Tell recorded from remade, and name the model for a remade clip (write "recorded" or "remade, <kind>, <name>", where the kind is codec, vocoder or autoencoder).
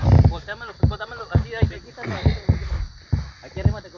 recorded